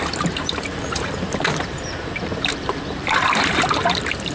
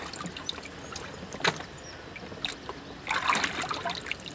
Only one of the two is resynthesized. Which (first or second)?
first